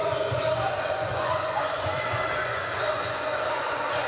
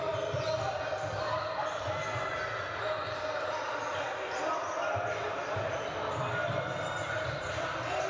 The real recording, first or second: second